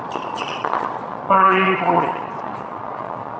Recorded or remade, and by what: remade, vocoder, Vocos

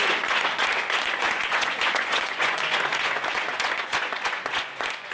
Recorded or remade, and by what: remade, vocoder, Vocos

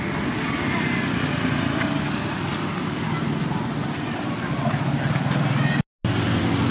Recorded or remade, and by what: recorded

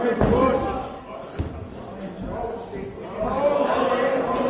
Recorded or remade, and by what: recorded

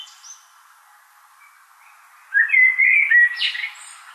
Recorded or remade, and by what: recorded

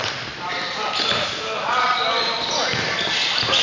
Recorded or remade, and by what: recorded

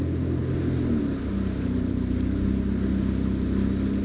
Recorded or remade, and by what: recorded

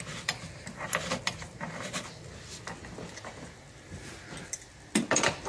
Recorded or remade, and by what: recorded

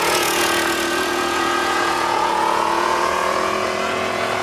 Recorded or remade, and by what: remade, vocoder, Vocos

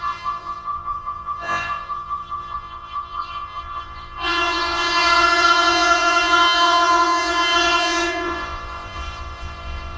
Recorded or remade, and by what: remade, vocoder, Vocos